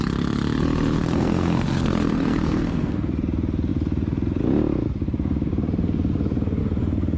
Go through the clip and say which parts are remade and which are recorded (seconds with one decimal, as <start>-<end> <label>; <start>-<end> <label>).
0.0-1.0 recorded; 1.0-3.1 remade; 3.1-7.2 recorded